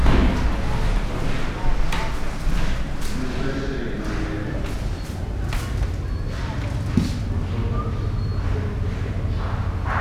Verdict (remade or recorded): recorded